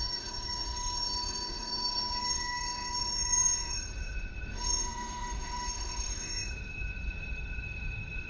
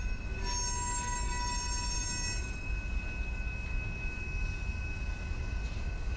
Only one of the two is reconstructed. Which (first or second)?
first